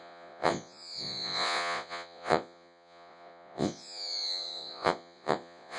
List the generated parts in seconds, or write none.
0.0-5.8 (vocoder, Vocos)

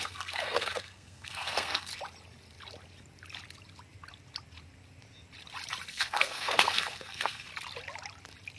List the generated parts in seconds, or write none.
0.0-1.9 (codec, SNAC); 5.9-7.5

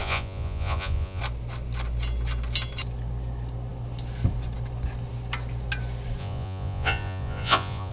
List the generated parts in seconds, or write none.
0.0-1.2 (vocoder, Vocos); 6.2-7.9

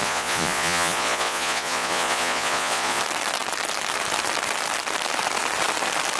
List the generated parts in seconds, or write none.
0.0-3.0 (vocoder, Vocos)